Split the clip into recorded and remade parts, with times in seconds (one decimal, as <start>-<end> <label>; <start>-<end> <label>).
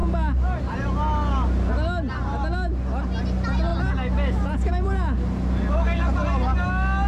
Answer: 0.0-7.1 recorded